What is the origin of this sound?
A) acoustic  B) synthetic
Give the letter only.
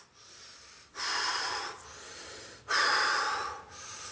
B